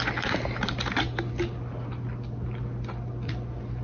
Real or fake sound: real